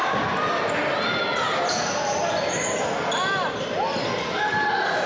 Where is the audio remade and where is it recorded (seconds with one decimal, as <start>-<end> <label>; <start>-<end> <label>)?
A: 0.0-5.1 recorded